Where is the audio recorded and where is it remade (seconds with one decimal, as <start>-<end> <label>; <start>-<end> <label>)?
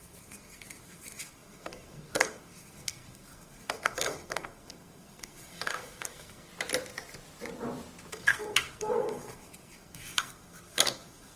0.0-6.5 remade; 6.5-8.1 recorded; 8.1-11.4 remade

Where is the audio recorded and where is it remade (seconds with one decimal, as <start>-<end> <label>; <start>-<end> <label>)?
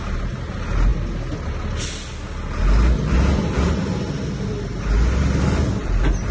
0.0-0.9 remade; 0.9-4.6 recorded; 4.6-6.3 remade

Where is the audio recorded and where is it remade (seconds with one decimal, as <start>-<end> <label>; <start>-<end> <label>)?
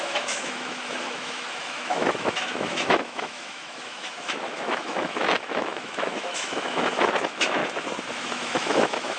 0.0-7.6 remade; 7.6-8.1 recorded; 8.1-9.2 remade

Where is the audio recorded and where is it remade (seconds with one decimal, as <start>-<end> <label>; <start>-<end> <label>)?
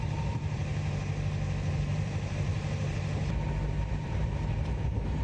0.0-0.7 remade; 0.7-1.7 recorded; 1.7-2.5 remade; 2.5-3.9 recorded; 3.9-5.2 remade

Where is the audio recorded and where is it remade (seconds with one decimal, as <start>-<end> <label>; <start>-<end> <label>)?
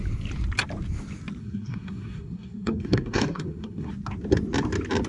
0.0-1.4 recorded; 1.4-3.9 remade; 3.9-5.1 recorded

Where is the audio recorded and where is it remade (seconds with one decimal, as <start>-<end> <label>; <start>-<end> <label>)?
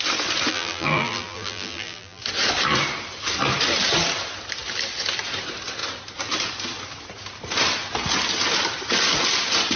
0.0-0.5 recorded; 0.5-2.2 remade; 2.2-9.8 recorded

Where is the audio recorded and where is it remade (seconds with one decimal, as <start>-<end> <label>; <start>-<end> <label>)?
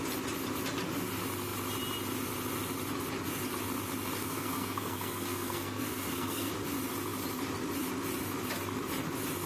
0.0-4.2 recorded; 4.2-6.5 remade; 6.5-9.5 recorded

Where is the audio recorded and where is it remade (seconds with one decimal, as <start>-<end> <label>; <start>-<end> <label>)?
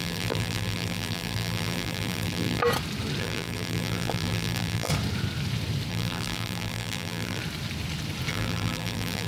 0.0-2.6 remade; 2.6-3.2 recorded; 3.2-4.9 remade; 4.9-5.9 recorded; 5.9-7.4 remade; 7.4-8.3 recorded; 8.3-9.3 remade